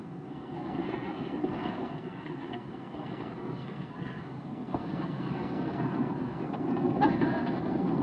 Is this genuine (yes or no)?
no